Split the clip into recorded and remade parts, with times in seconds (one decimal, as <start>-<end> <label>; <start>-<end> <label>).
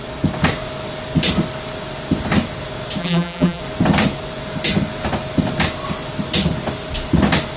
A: 0.0-3.0 recorded; 3.0-3.6 remade; 3.6-7.6 recorded